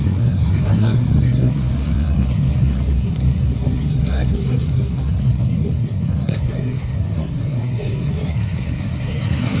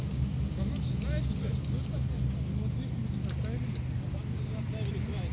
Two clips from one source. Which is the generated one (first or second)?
first